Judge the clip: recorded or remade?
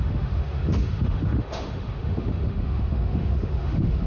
remade